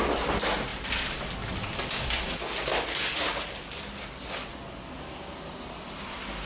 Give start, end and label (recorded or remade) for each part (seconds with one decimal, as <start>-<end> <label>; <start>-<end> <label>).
0.0-6.5 recorded

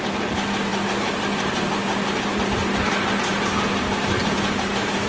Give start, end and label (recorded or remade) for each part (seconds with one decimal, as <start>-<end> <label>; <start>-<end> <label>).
0.0-5.1 recorded

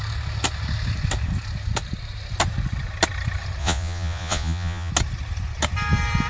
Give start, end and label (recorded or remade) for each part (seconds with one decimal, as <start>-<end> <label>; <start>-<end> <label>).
0.0-3.6 recorded; 3.6-4.9 remade; 4.9-6.3 recorded

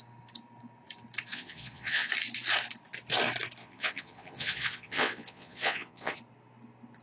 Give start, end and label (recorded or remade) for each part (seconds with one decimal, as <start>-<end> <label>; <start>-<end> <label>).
0.0-1.3 recorded; 1.3-2.1 remade; 2.1-3.6 recorded; 3.6-6.2 remade; 6.2-7.0 recorded

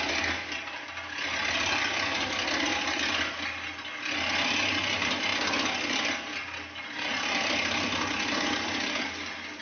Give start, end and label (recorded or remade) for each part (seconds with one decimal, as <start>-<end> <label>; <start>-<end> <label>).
0.0-9.6 recorded

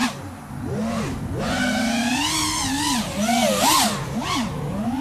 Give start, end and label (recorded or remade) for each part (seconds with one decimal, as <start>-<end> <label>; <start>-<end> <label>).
0.0-5.0 recorded

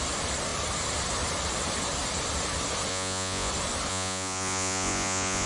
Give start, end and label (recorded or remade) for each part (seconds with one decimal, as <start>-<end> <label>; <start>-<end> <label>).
0.0-2.9 recorded; 2.9-3.5 remade; 3.5-3.9 recorded; 3.9-5.5 remade

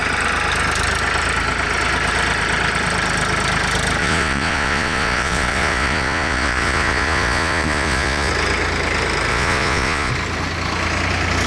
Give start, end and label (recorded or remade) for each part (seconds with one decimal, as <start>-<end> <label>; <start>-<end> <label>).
0.0-4.0 recorded; 4.0-8.3 remade; 8.3-9.3 recorded; 9.3-10.1 remade; 10.1-11.5 recorded